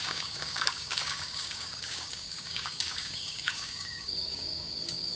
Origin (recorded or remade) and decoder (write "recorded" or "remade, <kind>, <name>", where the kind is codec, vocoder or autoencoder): remade, codec, DAC